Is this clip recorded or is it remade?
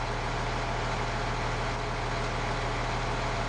recorded